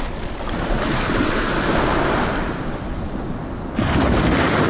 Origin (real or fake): real